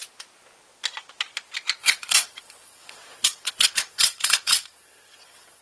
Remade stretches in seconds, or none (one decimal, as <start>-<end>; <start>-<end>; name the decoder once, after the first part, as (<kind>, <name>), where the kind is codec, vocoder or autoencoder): 1.8-5.6 (vocoder, WaveNeXt)